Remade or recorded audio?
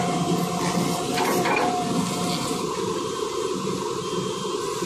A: recorded